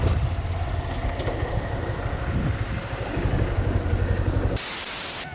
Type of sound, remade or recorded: recorded